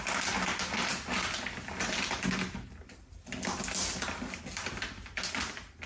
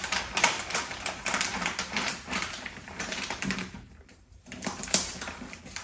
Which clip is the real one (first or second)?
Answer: first